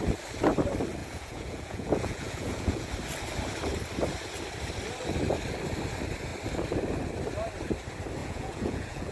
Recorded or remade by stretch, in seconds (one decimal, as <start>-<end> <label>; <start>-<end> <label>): 0.0-1.0 recorded; 1.0-2.9 remade; 2.9-8.2 recorded; 8.2-9.1 remade